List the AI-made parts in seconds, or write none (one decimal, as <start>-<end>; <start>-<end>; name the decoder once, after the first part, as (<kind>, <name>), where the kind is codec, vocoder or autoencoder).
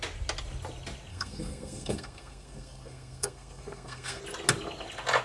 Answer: 1.1-4.2 (codec, SNAC)